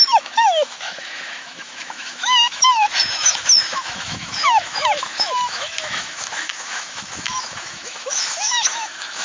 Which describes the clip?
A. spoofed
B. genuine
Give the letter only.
A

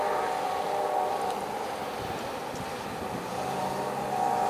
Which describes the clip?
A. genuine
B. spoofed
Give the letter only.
A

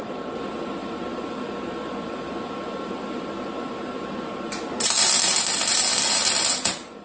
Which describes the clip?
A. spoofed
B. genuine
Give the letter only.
B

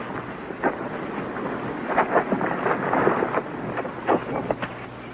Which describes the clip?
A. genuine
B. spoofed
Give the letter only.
A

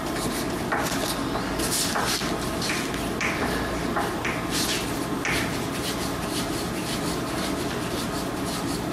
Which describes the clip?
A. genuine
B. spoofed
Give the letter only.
A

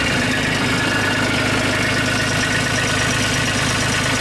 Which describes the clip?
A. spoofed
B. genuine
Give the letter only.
B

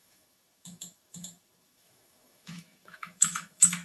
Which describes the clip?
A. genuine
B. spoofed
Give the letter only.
B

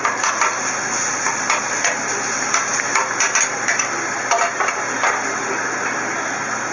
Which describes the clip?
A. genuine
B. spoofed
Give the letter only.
A